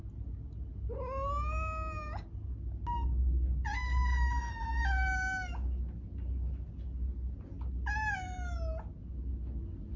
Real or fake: real